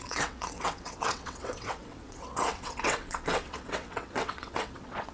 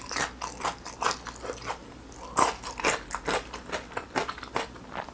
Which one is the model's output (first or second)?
first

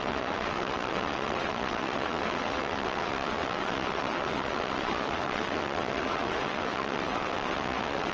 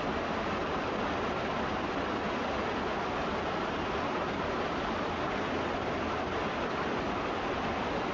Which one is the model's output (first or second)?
first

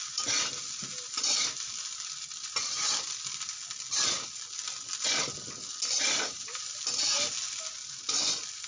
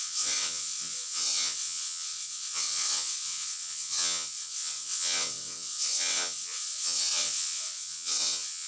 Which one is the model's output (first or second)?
second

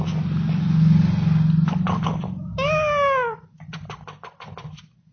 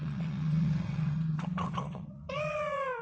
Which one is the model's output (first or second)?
second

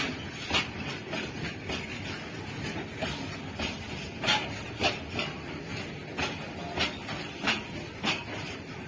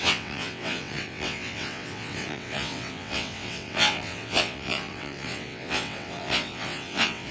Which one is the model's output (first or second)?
second